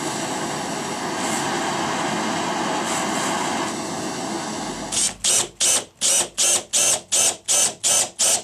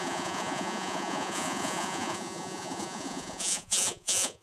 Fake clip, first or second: second